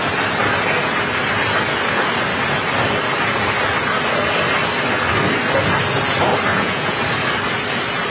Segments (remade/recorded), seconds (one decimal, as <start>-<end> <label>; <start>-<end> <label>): 0.0-6.5 recorded; 6.5-7.0 remade; 7.0-8.1 recorded